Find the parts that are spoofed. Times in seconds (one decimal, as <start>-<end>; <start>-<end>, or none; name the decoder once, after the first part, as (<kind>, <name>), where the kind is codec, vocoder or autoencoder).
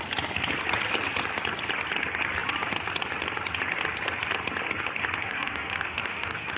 5.2-6.6 (autoencoder, DAC-VAE)